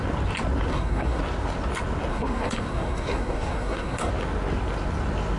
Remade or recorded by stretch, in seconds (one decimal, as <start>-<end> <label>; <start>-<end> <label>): 0.0-0.7 recorded; 0.7-1.2 remade; 1.2-2.1 recorded; 2.1-4.1 remade; 4.1-5.4 recorded